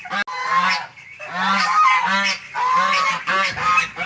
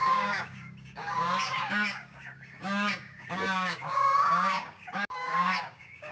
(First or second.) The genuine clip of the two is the first